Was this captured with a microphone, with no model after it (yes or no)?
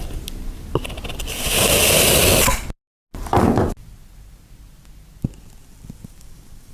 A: yes